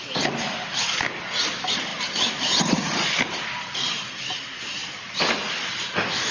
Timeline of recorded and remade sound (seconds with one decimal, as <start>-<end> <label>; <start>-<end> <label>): 0.0-6.3 recorded